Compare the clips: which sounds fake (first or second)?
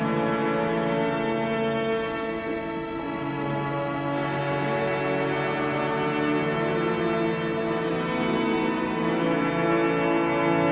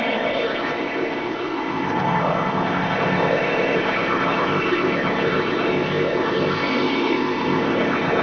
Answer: second